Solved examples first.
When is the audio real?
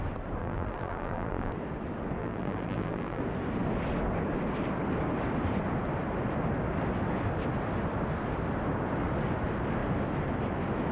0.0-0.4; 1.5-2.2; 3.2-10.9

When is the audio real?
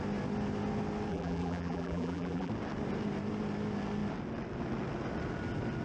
0.0-1.1; 2.5-5.8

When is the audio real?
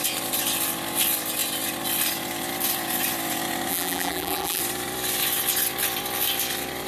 0.0-3.7; 4.6-6.9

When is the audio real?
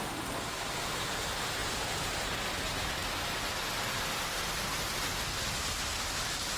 0.0-1.6; 2.2-6.6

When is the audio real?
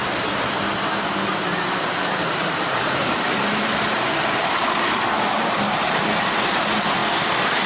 0.0-2.2; 3.8-4.4; 6.6-7.7